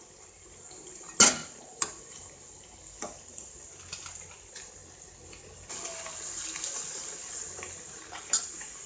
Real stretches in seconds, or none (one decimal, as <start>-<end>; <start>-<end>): 0.0-8.9